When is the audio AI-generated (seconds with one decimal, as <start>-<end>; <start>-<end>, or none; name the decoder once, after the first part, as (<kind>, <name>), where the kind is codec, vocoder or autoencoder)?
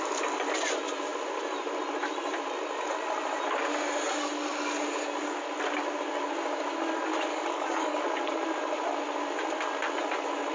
7.3-8.0 (codec, DAC)